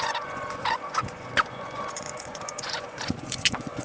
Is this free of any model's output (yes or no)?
no